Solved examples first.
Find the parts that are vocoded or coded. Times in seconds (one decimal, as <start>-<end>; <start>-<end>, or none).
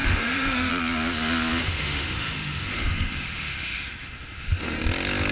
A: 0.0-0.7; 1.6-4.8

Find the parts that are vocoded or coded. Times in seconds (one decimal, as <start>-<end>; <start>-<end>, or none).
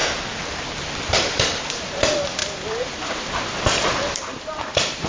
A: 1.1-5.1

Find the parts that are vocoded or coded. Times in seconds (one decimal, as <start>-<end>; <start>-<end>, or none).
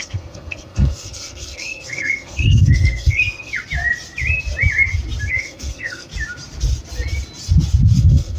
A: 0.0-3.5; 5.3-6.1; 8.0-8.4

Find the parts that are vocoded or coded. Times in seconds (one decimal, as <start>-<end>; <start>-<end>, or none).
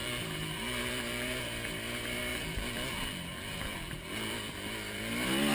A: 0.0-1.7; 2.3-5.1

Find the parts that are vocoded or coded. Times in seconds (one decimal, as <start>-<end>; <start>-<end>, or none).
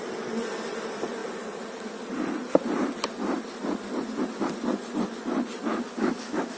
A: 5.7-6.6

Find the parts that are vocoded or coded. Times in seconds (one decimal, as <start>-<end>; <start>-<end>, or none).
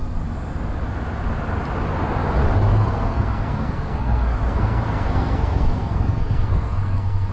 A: 2.7-7.3